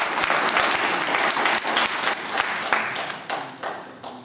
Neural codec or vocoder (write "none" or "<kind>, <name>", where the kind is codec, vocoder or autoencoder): none